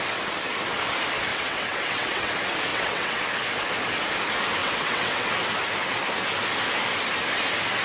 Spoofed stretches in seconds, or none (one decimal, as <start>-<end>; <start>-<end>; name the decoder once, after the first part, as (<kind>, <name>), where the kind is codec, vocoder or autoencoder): 1.3-2.3 (vocoder, WaveNeXt); 2.7-3.2; 4.6-5.3

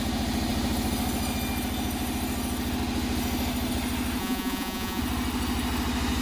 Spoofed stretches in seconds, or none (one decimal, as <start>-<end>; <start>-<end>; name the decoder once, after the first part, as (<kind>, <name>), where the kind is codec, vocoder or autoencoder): 4.2-5.0 (vocoder, Vocos)

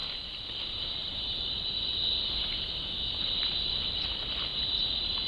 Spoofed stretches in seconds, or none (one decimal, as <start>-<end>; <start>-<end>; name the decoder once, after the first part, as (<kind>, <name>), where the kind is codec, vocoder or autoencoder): none

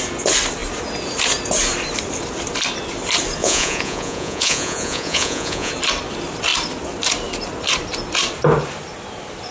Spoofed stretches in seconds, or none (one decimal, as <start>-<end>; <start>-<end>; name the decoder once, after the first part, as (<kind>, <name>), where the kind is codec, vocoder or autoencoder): 3.4-5.7 (vocoder, Vocos)

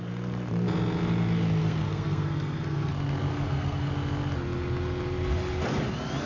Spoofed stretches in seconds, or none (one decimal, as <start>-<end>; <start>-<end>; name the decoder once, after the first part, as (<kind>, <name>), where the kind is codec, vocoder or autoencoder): 1.6-2.9 (codec, SNAC); 3.3-3.9